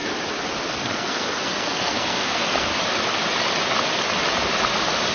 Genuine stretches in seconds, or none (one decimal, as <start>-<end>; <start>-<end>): 0.0-0.7; 2.7-5.1